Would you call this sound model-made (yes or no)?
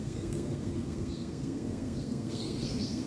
yes